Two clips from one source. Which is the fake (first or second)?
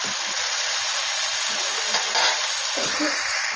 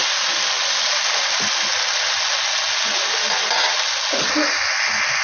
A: first